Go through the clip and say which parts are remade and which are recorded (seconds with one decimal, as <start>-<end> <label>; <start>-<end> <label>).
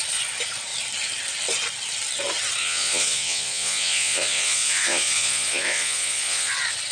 0.0-2.6 recorded; 2.6-6.5 remade; 6.5-6.9 recorded